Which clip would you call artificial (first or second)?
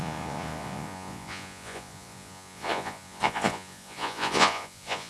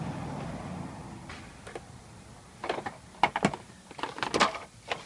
first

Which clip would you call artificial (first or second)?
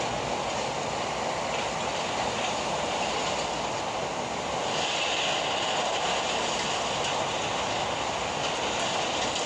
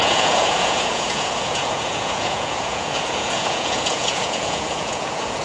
second